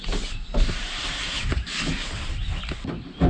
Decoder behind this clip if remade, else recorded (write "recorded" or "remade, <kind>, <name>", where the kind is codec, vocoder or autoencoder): recorded